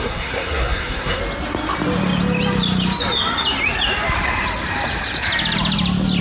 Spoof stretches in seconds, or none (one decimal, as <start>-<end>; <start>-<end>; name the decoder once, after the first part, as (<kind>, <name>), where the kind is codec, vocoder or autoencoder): 0.0-1.2 (codec, SNAC)